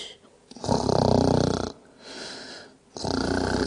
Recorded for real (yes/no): yes